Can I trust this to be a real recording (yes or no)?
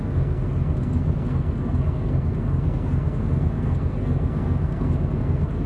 no